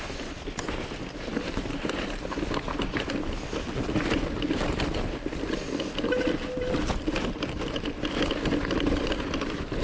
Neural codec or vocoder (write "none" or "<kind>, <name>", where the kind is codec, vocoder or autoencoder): none